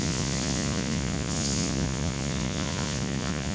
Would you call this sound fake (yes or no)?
yes